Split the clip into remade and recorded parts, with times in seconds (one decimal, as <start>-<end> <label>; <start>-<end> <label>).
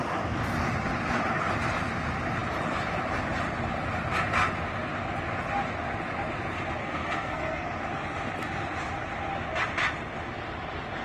0.0-6.8 recorded; 6.8-7.6 remade; 7.6-11.0 recorded